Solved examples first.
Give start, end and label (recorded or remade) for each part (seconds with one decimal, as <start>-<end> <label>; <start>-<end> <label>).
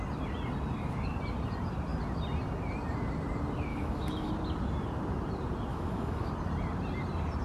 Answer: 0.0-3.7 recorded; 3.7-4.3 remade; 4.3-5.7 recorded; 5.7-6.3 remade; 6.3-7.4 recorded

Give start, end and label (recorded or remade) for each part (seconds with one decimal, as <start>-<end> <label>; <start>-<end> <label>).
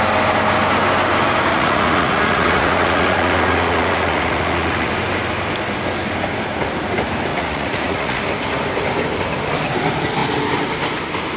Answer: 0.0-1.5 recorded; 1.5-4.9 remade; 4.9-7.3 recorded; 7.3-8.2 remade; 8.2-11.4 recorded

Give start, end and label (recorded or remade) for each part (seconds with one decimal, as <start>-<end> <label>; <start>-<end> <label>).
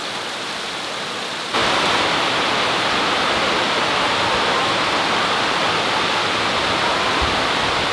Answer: 0.0-6.9 recorded; 6.9-7.9 remade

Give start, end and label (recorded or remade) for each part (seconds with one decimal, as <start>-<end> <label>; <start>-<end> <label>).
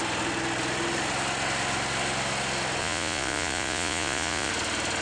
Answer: 0.0-2.8 recorded; 2.8-4.5 remade; 4.5-5.0 recorded